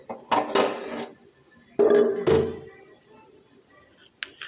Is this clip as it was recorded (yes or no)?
yes